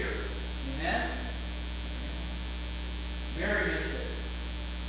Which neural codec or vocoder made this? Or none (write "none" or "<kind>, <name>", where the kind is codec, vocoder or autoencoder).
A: none